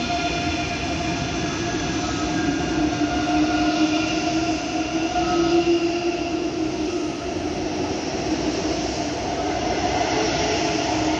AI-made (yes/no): no